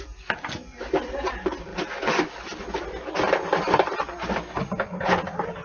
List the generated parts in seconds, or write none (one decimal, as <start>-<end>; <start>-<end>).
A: none

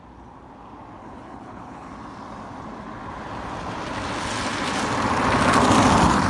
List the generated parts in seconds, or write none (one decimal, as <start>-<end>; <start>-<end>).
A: 1.0-1.9

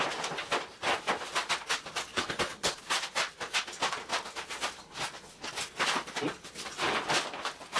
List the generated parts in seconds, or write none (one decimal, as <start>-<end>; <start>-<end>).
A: 2.1-2.8

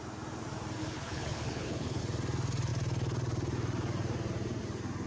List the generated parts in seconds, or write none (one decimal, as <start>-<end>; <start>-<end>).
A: 0.8-2.0

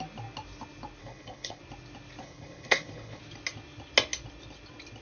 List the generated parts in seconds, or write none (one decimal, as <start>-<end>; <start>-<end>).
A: 1.0-1.6; 2.2-3.2